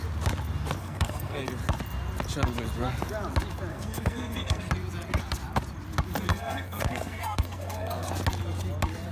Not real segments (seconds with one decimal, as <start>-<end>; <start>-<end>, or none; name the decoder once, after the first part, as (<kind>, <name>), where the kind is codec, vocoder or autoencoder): 0.8-1.5 (codec, SNAC); 3.7-4.7; 6.3-8.1